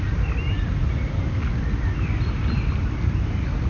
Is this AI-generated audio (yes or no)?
no